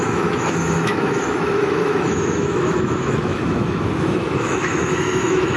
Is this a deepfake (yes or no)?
yes